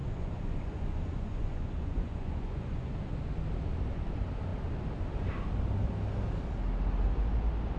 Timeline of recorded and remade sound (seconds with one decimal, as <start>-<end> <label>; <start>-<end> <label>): 0.0-2.9 remade; 2.9-7.8 recorded